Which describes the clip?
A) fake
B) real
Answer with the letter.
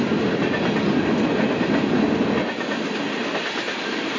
B